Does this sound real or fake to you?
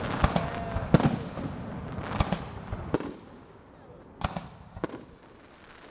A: real